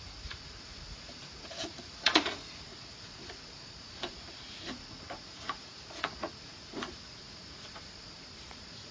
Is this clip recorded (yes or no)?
no